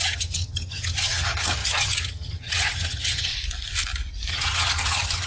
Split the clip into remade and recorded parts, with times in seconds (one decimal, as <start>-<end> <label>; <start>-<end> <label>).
0.0-3.3 remade; 3.3-4.3 recorded; 4.3-5.3 remade